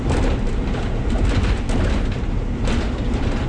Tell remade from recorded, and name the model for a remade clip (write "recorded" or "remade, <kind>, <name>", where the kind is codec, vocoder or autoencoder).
recorded